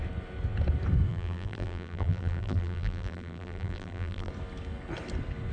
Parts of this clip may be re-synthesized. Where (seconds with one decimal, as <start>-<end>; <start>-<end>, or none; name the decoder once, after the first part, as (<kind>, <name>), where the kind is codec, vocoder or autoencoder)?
1.1-4.3 (vocoder, BigVGAN v2)